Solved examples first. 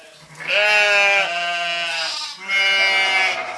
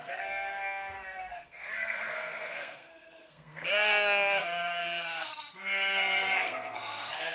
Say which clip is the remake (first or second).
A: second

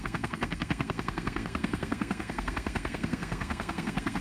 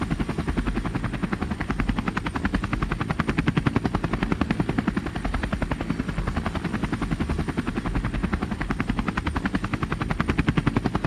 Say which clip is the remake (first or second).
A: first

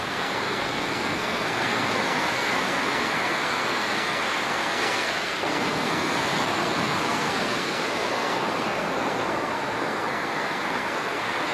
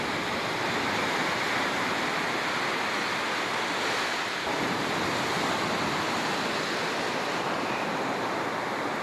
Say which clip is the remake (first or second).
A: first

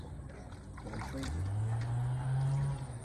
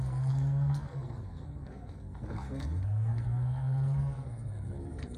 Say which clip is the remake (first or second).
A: second